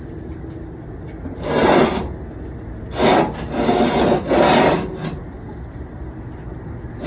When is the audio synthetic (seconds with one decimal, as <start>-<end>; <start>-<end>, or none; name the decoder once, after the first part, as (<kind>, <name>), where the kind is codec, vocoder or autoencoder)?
none